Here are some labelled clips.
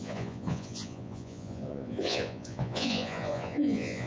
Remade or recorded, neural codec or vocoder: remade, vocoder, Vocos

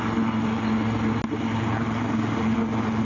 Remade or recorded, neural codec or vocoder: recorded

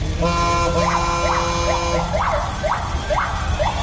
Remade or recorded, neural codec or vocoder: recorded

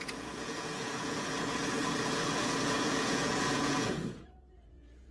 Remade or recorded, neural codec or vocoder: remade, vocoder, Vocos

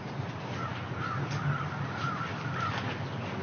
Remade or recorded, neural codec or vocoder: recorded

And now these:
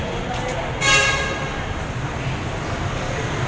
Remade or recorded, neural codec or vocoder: recorded